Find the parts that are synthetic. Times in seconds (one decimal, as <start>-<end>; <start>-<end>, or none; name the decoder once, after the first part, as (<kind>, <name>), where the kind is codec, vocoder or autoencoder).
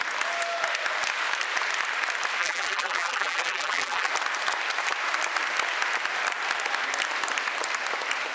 2.4-4.1 (vocoder, BigVGAN v2)